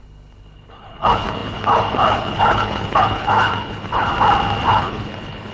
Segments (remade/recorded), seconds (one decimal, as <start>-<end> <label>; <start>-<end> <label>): 0.0-4.1 remade; 4.1-4.7 recorded; 4.7-5.5 remade